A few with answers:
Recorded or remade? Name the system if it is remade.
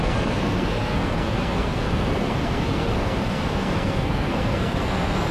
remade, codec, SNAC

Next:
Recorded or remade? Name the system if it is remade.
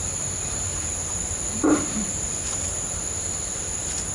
remade, vocoder, BigVGAN v2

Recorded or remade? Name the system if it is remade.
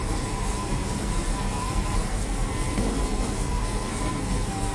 remade, codec, SNAC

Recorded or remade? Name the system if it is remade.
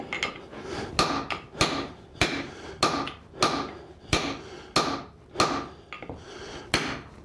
recorded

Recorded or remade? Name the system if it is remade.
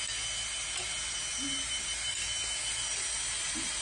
recorded